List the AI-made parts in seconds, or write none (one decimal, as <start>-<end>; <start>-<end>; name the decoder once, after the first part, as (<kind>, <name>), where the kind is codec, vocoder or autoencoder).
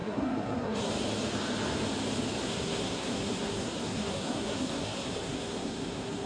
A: 0.0-0.9 (codec, SNAC); 2.4-6.3